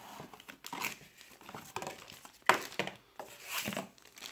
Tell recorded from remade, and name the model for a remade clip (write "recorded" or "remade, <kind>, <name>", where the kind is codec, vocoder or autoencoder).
recorded